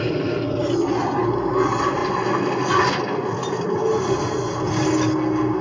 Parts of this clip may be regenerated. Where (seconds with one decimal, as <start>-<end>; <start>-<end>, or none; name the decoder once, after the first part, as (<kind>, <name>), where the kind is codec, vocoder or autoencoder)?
none